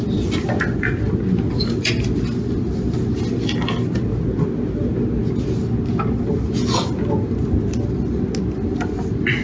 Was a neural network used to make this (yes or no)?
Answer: no